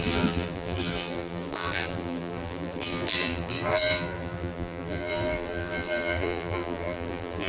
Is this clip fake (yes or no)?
yes